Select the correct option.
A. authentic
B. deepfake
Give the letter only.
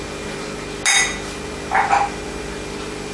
A